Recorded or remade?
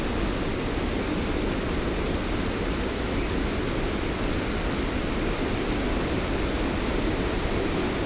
recorded